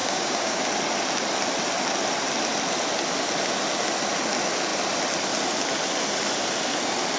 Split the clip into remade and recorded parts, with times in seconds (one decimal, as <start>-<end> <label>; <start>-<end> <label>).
0.0-0.6 remade; 0.6-7.2 recorded